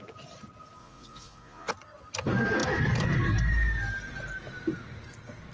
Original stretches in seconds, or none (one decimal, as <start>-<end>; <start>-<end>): 0.0-0.8; 1.7-5.5